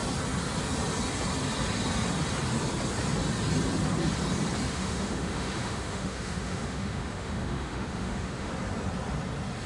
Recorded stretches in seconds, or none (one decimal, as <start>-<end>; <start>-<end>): 0.0-4.7; 8.5-9.7